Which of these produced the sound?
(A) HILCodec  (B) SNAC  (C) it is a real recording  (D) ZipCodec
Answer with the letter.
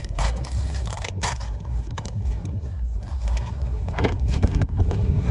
B